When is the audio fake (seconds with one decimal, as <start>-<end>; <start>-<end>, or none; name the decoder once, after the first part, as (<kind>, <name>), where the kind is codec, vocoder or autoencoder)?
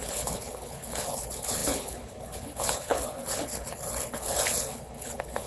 0.0-5.5 (codec, HILCodec)